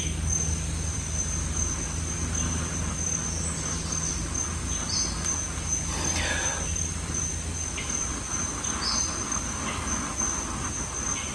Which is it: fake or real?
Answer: real